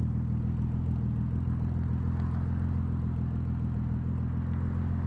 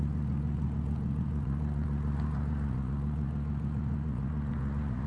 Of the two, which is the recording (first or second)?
first